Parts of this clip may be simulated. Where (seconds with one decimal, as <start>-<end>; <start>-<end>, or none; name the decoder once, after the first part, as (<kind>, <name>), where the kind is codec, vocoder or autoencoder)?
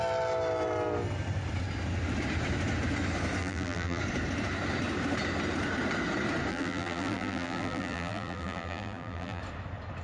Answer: 3.4-4.0 (vocoder, BigVGAN v2); 6.5-9.4